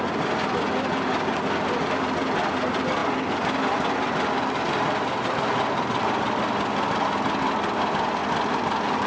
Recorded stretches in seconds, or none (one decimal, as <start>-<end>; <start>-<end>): 0.0-9.1